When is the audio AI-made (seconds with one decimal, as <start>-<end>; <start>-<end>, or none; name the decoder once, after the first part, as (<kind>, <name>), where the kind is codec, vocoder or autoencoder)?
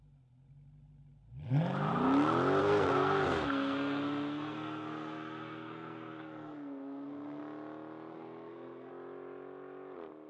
2.6-7.4 (codec, SNAC); 8.1-8.9